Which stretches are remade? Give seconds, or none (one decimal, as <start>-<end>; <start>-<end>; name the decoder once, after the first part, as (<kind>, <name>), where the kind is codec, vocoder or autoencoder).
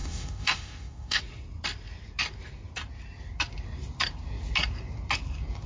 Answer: 0.0-1.2 (autoencoder, DAC-VAE)